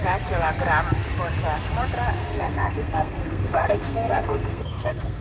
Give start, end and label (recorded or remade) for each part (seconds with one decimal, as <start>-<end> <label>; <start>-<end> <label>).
0.0-2.2 recorded; 2.2-5.2 remade